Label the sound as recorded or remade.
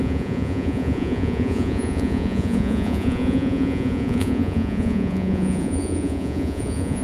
remade